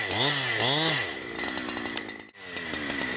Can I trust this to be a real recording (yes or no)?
yes